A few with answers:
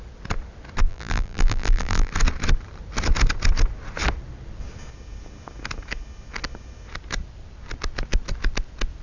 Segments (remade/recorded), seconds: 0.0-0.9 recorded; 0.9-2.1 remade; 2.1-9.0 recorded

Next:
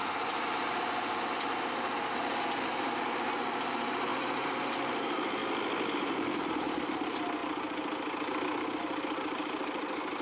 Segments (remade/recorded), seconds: 0.0-5.4 remade; 5.4-5.9 recorded; 5.9-7.4 remade; 7.4-8.8 recorded; 8.8-10.2 remade

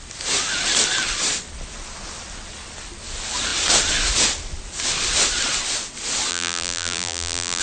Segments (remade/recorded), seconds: 0.0-6.3 recorded; 6.3-7.6 remade